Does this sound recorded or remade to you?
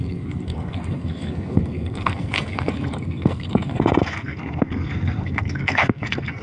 remade